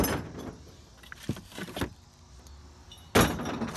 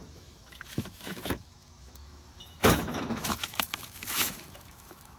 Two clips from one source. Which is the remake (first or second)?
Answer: second